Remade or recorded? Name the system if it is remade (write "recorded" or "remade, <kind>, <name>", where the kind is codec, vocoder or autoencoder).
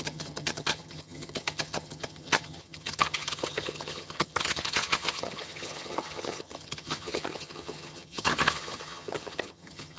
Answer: remade, vocoder, HiFi-GAN